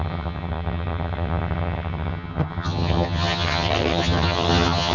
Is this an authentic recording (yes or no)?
no